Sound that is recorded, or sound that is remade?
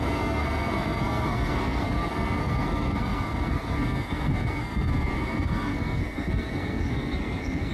remade